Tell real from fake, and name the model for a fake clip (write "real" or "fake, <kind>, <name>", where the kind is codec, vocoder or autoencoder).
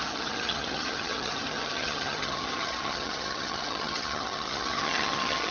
fake, vocoder, HiFi-GAN